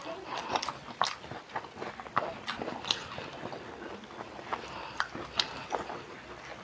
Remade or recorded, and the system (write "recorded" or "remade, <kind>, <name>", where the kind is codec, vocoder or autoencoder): recorded